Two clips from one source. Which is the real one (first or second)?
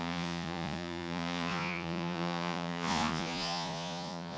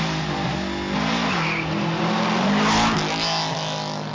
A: second